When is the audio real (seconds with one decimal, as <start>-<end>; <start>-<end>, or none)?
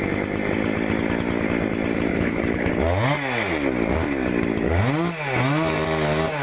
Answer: 0.0-2.1; 2.7-6.4